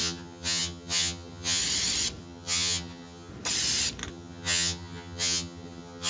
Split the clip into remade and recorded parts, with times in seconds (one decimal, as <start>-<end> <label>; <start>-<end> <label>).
0.0-1.6 remade; 1.6-2.2 recorded; 2.2-3.3 remade; 3.3-4.1 recorded; 4.1-6.1 remade